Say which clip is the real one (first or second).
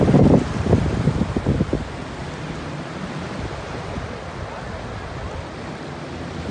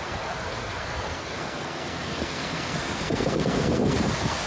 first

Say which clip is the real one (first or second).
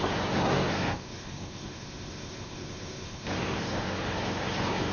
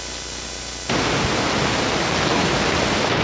second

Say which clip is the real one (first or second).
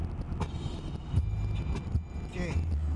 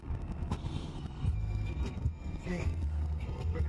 first